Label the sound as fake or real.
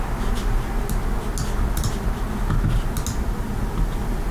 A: real